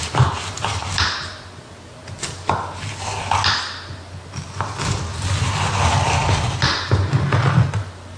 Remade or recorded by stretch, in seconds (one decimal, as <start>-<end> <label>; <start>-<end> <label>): 0.0-8.2 recorded